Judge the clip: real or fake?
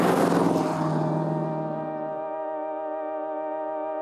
real